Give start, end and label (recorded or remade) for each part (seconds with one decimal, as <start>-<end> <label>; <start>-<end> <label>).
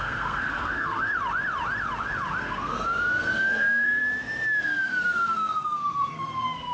0.0-1.1 remade; 1.1-2.4 recorded; 2.4-4.0 remade; 4.0-4.6 recorded; 4.6-6.7 remade